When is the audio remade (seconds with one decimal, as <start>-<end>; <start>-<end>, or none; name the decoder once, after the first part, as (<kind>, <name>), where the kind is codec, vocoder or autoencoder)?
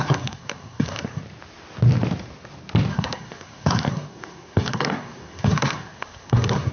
0.0-1.2 (codec, SNAC); 2.9-6.7